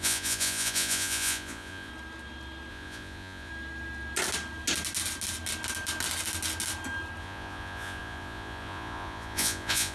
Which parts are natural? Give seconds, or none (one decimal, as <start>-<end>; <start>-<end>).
1.9-2.7; 3.5-7.2